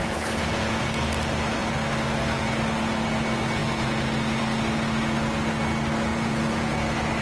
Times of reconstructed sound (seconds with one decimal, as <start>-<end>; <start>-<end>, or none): 0.0-0.8; 6.1-6.8